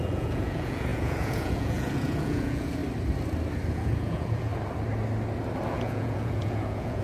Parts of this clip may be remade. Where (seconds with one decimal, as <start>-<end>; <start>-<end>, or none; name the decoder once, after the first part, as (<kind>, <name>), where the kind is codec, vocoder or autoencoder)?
0.0-2.8 (vocoder, Vocos); 3.7-4.5; 5.7-7.0